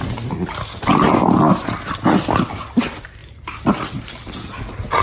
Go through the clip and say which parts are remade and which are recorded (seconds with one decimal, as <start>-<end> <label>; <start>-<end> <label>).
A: 0.0-3.2 recorded; 3.2-3.7 remade; 3.7-5.0 recorded

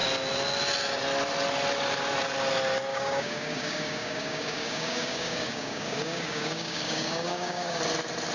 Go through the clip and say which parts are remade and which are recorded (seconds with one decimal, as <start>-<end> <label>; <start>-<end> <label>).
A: 0.0-2.9 recorded; 2.9-7.8 remade; 7.8-8.3 recorded